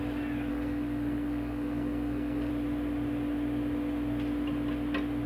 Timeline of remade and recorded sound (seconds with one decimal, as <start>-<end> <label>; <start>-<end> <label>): 0.0-0.5 recorded; 0.5-2.5 remade; 2.5-5.3 recorded